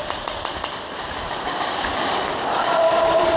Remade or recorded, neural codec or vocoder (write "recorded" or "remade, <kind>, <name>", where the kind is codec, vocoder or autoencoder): remade, vocoder, BigVGAN v2